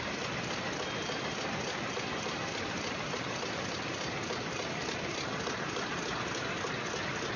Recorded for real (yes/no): yes